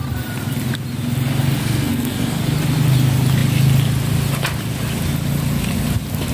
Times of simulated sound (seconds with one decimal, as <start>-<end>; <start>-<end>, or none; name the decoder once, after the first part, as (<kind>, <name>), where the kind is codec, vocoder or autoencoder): 1.6-2.4 (codec, SNAC)